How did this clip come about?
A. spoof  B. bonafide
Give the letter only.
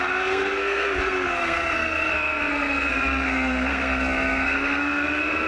A